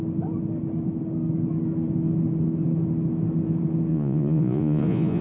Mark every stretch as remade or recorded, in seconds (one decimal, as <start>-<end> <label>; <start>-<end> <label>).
0.0-3.9 recorded; 3.9-5.2 remade